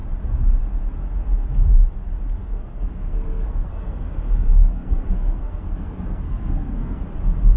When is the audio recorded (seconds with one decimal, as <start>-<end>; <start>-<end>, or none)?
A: 0.0-2.4; 7.0-7.6